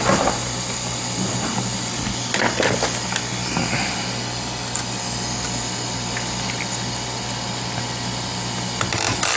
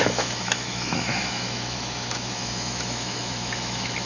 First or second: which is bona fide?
first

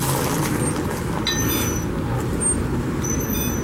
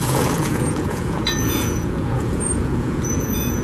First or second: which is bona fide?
first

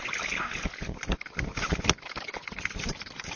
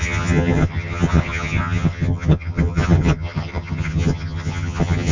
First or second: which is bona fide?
first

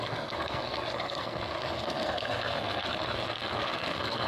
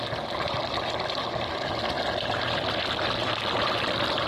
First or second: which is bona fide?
second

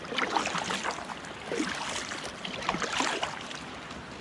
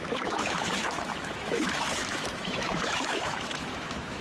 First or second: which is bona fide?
first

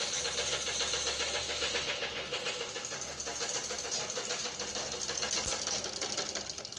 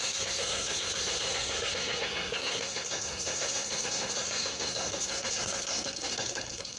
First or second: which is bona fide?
first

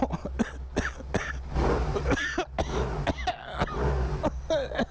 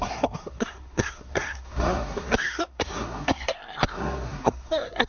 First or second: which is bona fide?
first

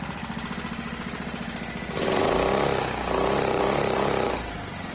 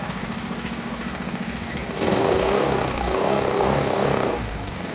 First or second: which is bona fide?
first